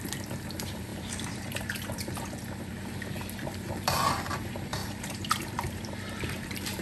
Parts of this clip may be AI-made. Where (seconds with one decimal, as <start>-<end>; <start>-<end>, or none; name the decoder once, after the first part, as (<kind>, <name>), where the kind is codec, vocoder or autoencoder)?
0.0-6.8 (vocoder, BigVGAN v2)